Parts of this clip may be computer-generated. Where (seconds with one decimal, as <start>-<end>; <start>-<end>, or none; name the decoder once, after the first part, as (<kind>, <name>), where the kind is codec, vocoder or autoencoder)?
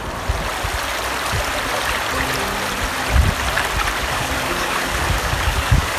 4.0-6.0 (codec, DAC)